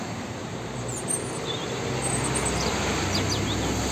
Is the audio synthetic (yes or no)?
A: no